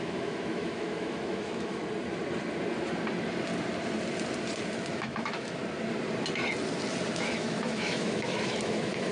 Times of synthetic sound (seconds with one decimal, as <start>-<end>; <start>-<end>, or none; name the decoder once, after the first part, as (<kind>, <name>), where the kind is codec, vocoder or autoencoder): 0.0-1.8 (autoencoder, DAC-VAE); 4.9-5.6; 7.1-9.1